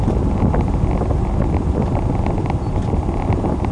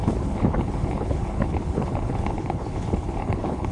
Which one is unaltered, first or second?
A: first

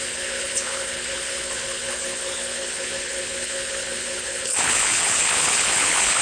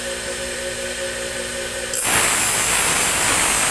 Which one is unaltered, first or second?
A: second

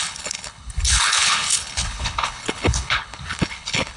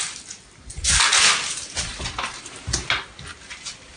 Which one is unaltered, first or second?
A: second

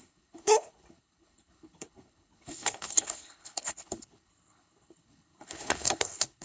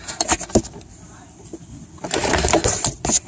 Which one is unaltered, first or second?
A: second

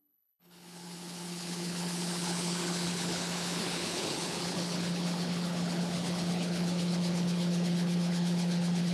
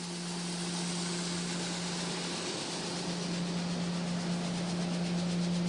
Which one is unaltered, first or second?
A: second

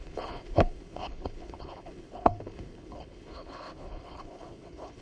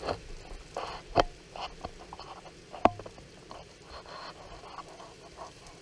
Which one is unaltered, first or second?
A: second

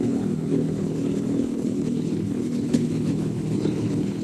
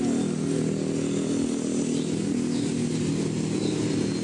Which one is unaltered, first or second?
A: second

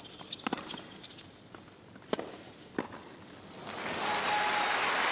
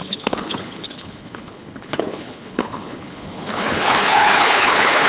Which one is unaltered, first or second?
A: first